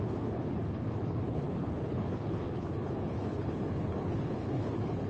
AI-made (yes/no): yes